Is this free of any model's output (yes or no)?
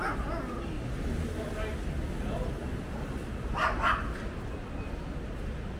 yes